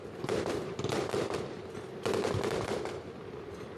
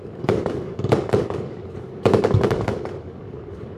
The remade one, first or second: second